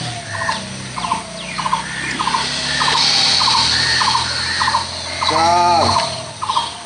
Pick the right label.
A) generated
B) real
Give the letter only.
B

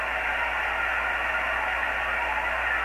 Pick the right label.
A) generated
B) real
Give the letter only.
B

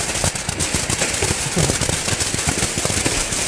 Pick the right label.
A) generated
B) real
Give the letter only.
B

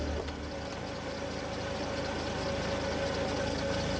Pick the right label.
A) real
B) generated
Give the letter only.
A